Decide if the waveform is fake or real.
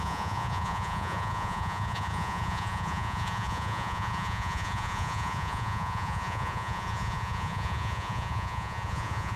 fake